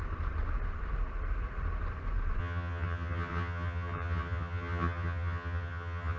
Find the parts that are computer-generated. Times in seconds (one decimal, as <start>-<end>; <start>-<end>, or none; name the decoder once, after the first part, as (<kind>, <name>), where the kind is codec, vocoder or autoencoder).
2.4-6.2 (vocoder, HiFi-GAN)